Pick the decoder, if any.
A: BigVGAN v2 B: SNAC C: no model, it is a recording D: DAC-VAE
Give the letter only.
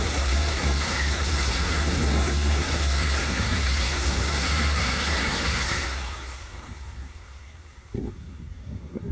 B